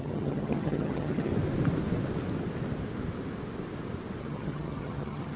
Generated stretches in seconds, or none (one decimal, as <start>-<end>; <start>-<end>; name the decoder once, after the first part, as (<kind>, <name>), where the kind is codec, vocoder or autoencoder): 0.0-1.3 (vocoder, HiFi-GAN); 4.2-5.4